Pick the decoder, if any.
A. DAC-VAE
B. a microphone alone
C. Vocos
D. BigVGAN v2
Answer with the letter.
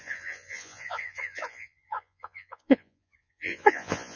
C